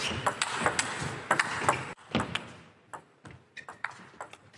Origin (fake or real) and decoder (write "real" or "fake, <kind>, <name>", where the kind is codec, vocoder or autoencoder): real